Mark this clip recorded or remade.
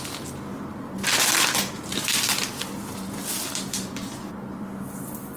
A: recorded